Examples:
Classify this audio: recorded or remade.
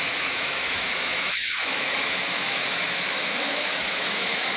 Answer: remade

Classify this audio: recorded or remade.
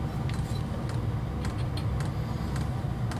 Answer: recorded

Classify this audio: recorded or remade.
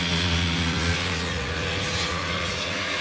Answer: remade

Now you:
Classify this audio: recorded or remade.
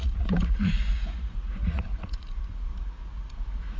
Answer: remade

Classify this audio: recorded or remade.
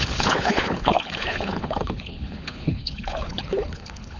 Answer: remade